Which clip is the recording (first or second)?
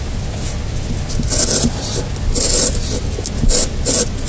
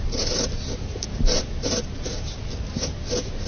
first